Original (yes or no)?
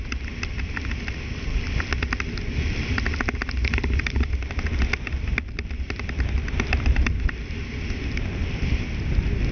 yes